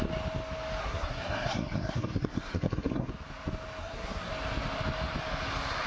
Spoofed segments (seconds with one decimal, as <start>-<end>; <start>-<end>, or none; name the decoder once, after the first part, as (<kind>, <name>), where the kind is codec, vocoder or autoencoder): 0.8-3.1 (codec, SNAC); 3.8-4.3